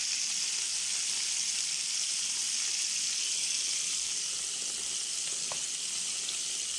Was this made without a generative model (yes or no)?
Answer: yes